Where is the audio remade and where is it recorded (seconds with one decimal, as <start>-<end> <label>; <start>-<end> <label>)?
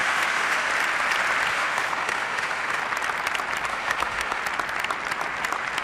0.0-0.7 remade; 0.7-1.5 recorded; 1.5-2.8 remade; 2.8-3.7 recorded; 3.7-4.4 remade; 4.4-5.8 recorded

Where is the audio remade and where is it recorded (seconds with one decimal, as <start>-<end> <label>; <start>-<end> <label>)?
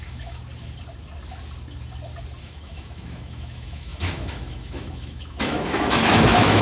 0.0-0.4 remade; 0.4-2.4 recorded; 2.4-6.6 remade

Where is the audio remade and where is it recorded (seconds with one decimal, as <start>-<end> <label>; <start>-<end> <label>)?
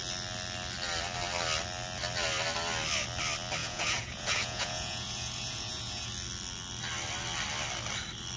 0.0-3.6 recorded; 3.6-6.1 remade; 6.1-8.4 recorded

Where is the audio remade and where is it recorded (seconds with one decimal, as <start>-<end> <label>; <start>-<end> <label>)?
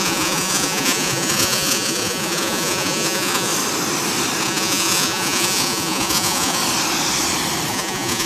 0.0-3.5 remade; 3.5-4.4 recorded; 4.4-6.6 remade; 6.6-7.7 recorded; 7.7-8.3 remade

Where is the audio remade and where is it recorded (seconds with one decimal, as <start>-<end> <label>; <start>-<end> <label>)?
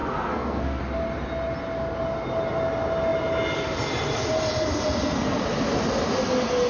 0.0-0.8 remade; 0.8-6.7 recorded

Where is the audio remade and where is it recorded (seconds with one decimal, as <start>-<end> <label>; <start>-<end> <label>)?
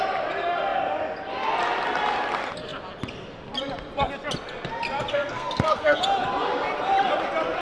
0.0-5.1 recorded; 5.1-6.0 remade; 6.0-7.6 recorded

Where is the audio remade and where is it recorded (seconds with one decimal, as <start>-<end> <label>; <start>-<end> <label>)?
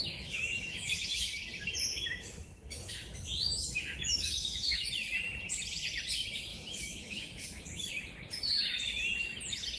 0.0-1.4 remade; 1.4-1.9 recorded; 1.9-4.9 remade; 4.9-6.5 recorded; 6.5-7.9 remade; 7.9-9.8 recorded